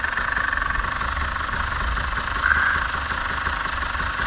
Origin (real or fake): real